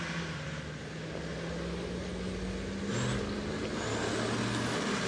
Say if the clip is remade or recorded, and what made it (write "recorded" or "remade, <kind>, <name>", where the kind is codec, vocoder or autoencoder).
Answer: recorded